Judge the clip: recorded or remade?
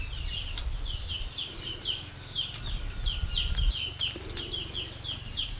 recorded